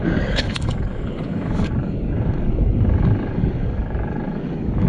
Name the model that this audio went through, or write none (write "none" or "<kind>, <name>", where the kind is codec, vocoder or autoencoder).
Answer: codec, DAC